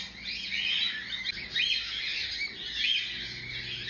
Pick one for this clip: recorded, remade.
recorded